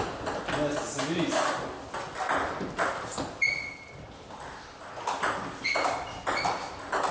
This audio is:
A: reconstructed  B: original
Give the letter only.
B